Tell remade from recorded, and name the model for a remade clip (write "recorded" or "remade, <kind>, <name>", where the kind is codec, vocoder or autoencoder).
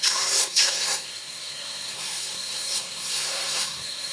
remade, codec, SNAC